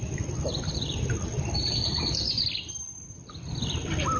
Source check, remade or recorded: recorded